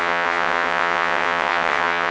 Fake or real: fake